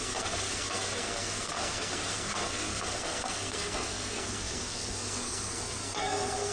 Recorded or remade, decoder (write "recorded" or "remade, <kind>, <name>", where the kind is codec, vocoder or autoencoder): remade, codec, SNAC